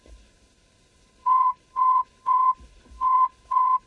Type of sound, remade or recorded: remade